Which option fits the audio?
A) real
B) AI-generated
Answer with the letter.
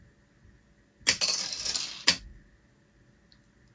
A